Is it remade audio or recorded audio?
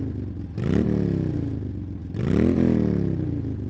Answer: recorded